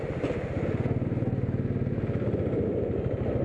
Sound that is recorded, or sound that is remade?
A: recorded